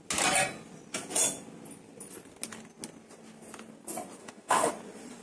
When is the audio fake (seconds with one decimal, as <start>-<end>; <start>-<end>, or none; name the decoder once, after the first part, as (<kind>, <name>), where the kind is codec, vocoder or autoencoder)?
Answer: 4.2-4.7 (autoencoder, DAC-VAE)